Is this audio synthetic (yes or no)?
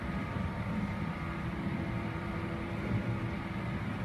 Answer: yes